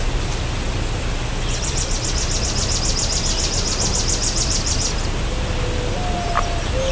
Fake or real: real